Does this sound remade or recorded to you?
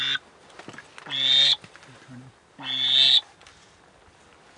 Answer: recorded